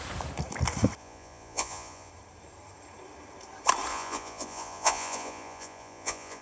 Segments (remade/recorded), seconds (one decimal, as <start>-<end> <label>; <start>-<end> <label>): 0.0-1.0 recorded; 1.0-2.1 remade; 2.1-3.9 recorded; 3.9-6.4 remade